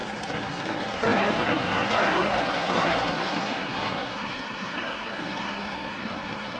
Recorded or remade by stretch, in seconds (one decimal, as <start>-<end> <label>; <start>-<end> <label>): 0.0-6.6 remade